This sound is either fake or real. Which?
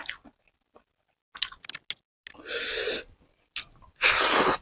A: real